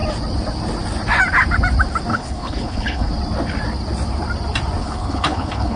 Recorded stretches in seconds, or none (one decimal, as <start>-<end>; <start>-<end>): 0.0-2.1; 3.1-4.8